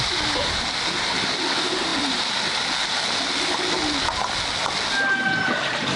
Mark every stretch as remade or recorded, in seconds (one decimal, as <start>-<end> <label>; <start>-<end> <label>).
0.0-6.0 recorded